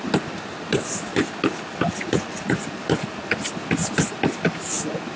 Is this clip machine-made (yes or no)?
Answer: no